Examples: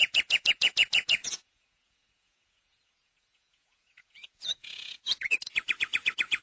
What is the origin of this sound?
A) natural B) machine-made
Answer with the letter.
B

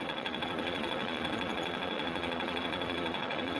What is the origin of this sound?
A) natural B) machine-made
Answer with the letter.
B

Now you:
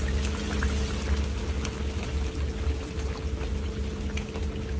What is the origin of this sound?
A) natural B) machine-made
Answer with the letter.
A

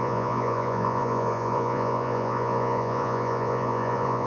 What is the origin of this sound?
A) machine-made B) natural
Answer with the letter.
A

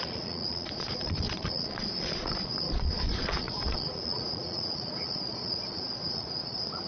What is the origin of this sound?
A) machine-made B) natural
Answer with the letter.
A